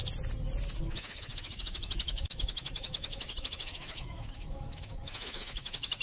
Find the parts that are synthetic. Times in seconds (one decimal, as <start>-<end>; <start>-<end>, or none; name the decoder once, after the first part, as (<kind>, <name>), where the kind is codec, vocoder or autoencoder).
0.8-6.0 (autoencoder, DAC-VAE)

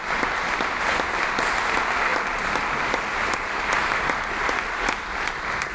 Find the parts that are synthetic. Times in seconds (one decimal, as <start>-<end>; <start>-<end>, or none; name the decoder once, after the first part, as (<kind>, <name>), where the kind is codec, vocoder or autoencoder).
none

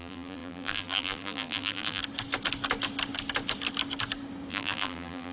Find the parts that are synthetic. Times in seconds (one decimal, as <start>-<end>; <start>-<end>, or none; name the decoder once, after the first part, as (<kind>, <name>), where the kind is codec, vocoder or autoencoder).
0.0-2.0 (vocoder, BigVGAN v2); 4.5-5.3

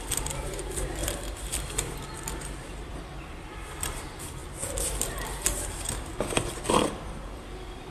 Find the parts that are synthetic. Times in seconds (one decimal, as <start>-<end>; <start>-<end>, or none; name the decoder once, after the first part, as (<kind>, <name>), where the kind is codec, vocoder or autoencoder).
0.0-4.4 (vocoder, BigVGAN v2); 5.1-7.9

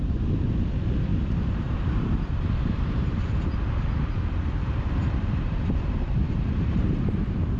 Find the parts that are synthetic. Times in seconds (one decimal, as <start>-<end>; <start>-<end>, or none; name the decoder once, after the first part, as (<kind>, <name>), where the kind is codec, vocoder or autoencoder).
1.1-3.5 (vocoder, BigVGAN v2); 5.0-7.6

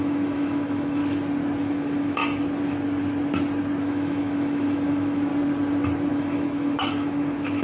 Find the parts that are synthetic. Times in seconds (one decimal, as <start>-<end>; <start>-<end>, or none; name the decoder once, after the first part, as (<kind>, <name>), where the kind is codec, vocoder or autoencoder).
0.0-1.0 (autoencoder, DAC-VAE); 1.6-2.2; 3.8-5.3; 6.1-7.6

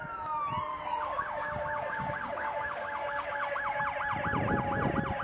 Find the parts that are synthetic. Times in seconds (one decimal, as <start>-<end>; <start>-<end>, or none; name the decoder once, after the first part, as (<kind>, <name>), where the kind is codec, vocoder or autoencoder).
0.7-3.8 (codec, DAC)